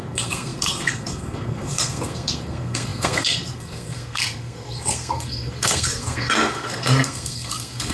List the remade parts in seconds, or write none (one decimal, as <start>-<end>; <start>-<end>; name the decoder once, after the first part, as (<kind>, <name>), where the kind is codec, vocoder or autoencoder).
0.0-7.9 (codec, SNAC)